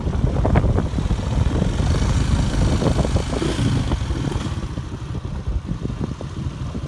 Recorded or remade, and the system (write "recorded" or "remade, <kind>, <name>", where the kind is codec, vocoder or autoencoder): recorded